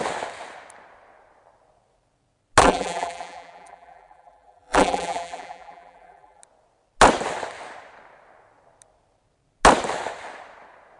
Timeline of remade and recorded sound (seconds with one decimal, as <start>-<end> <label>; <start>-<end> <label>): 0.0-2.6 recorded; 2.6-6.4 remade; 6.4-11.0 recorded